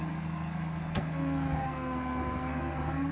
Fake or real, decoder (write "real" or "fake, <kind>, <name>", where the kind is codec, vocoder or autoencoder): fake, codec, SNAC